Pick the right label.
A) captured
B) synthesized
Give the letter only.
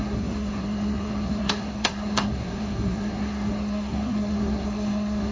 B